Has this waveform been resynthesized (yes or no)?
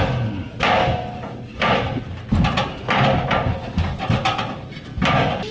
no